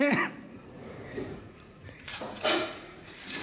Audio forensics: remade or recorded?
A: remade